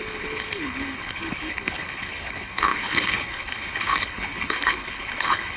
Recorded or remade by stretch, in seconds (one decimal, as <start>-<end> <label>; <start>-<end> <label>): 0.0-5.6 remade